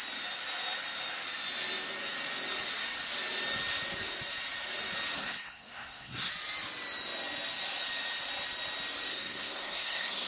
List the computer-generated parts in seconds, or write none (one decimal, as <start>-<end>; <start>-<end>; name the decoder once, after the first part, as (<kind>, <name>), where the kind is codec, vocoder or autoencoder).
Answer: 5.2-6.3 (codec, SNAC); 9.1-10.3